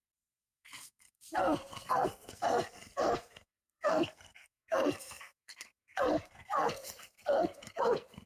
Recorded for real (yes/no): no